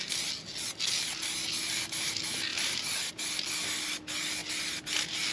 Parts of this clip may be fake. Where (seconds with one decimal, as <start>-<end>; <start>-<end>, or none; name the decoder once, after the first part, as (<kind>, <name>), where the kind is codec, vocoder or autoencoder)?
2.5-3.1 (vocoder, BigVGAN v2)